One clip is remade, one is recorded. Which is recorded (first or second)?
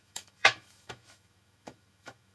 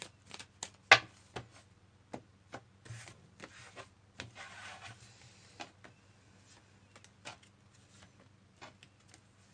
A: second